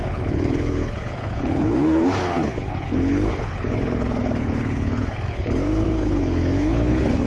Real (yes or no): no